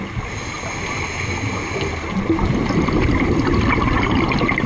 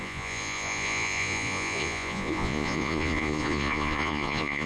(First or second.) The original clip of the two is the first